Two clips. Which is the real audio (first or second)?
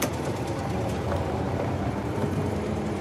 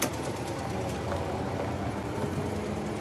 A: second